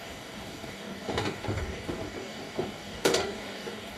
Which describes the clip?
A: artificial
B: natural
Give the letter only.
A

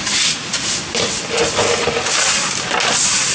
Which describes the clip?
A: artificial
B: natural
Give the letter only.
B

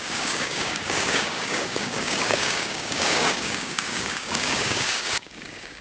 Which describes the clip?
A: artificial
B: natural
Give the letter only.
A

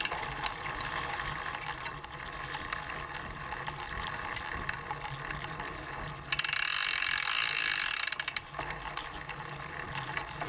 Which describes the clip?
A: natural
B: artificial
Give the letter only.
A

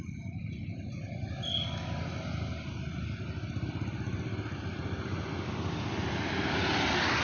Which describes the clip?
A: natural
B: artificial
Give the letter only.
A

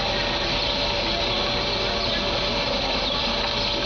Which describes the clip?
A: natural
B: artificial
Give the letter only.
A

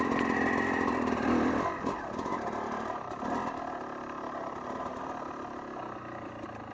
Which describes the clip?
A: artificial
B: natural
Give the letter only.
B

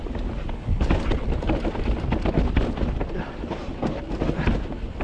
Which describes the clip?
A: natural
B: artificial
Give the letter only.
A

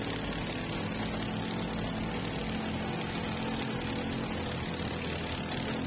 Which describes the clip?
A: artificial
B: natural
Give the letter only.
B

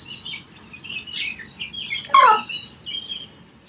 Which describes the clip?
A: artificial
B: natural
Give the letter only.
B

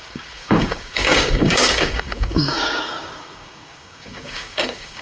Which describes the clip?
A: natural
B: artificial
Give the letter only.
B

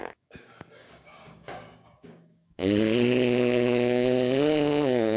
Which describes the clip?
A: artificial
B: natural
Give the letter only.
A